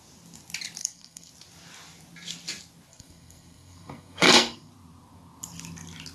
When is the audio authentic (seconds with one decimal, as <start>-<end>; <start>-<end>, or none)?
0.0-0.8; 1.3-2.9; 4.7-6.1